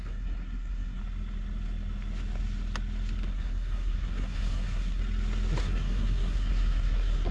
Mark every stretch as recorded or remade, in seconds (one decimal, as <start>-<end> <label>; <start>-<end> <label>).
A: 0.0-1.0 remade; 1.0-3.3 recorded; 3.3-5.0 remade; 5.0-5.6 recorded; 5.6-7.3 remade